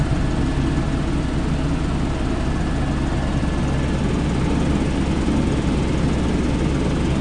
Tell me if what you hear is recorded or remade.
recorded